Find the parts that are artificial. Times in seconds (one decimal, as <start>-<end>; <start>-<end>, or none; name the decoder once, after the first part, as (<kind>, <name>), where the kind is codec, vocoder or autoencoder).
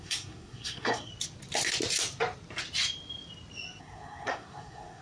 0.0-1.1 (codec, SNAC); 3.8-5.0